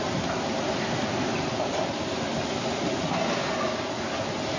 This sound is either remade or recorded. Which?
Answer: recorded